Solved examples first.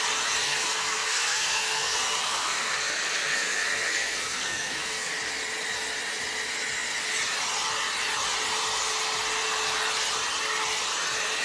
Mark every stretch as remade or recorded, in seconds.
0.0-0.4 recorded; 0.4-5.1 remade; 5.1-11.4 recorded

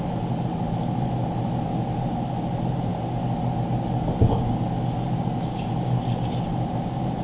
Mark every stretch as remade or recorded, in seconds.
0.0-7.2 recorded